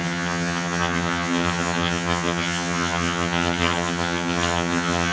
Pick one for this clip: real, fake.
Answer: fake